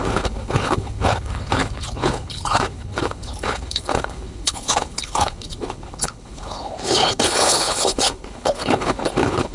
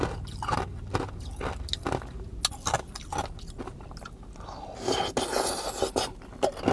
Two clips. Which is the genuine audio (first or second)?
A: second